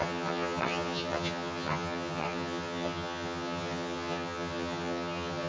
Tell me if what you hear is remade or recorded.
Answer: remade